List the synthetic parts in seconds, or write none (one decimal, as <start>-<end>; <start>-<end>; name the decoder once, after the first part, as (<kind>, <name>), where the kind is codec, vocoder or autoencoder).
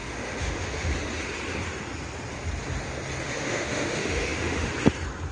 0.0-0.9 (autoencoder, DAC-VAE); 3.2-4.7